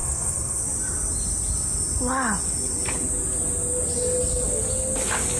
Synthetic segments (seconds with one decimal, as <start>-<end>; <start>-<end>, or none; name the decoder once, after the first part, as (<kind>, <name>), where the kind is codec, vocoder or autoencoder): 0.0-0.6 (codec, SNAC)